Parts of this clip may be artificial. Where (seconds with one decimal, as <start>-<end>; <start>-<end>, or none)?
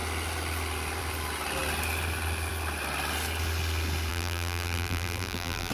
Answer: 4.1-5.7